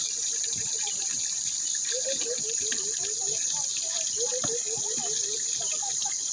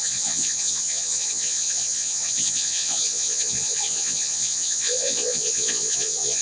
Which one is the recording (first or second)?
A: first